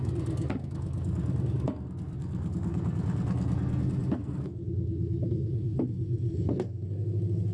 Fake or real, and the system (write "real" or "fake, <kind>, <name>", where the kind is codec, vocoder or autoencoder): fake, codec, SNAC